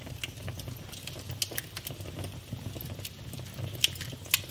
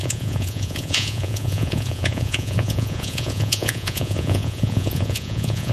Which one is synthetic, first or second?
second